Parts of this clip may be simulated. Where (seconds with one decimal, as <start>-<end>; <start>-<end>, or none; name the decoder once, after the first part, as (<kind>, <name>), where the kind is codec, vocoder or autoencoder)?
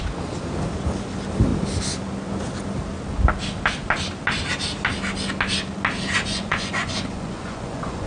6.3-8.1 (vocoder, Vocos)